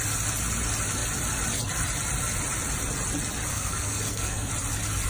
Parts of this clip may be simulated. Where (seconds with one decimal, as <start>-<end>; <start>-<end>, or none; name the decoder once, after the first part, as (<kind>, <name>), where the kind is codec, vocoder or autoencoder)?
3.5-4.5 (codec, SNAC)